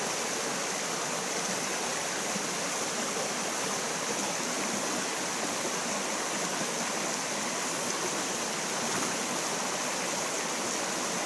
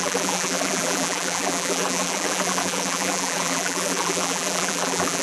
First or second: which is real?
first